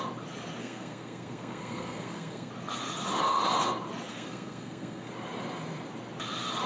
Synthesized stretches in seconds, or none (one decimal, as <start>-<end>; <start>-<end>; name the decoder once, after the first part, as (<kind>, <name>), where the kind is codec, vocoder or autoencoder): 0.6-2.5 (codec, SNAC); 4.1-5.1